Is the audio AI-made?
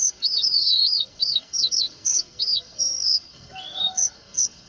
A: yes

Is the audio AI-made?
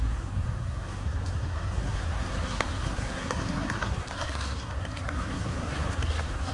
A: yes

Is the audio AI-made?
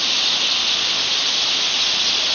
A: no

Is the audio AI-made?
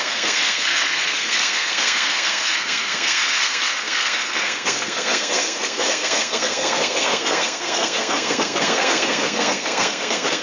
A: yes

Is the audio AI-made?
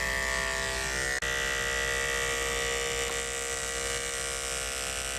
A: no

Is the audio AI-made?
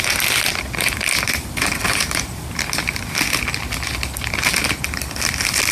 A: no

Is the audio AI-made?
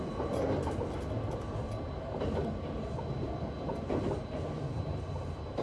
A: no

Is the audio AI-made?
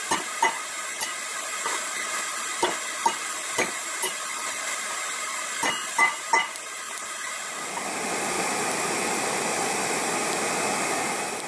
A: no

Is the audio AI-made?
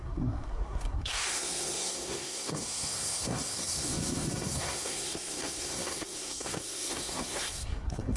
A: yes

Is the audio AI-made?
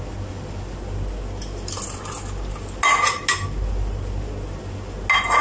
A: no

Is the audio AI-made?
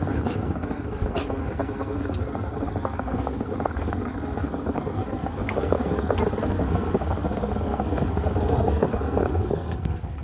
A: yes